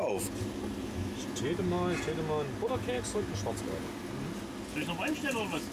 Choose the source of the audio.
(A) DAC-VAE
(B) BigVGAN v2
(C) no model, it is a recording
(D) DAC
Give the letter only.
C